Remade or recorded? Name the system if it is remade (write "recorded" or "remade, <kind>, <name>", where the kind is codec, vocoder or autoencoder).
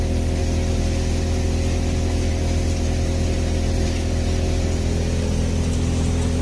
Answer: recorded